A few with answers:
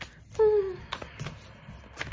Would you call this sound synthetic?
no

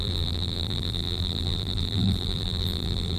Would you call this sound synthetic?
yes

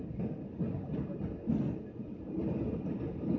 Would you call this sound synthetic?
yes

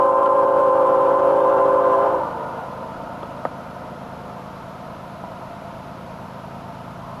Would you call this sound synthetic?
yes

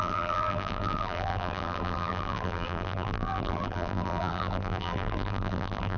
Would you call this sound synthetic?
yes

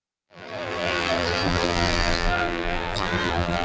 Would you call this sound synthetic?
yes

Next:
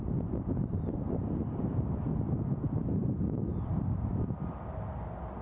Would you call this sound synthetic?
no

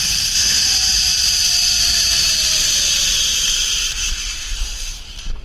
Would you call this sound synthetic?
yes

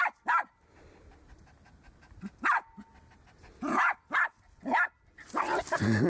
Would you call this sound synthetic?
no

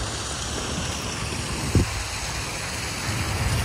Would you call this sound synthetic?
no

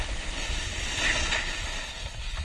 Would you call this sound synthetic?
no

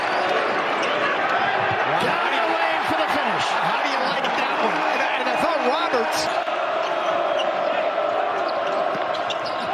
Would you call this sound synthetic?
yes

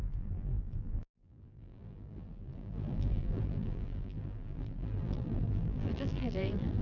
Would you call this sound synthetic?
yes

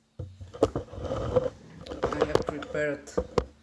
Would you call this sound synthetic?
no